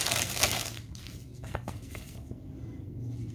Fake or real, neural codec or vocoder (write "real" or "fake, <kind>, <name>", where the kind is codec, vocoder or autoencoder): fake, codec, SNAC